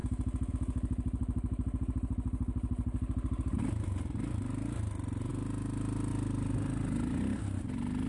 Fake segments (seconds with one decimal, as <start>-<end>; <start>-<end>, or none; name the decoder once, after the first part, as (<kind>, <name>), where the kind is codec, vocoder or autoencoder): none